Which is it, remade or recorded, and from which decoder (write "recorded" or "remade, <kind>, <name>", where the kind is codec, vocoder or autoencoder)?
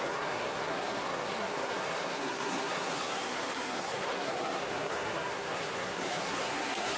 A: remade, codec, SNAC